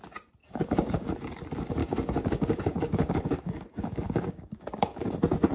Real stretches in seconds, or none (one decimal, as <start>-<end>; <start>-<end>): 0.0-0.4; 1.1-1.8; 5.1-5.5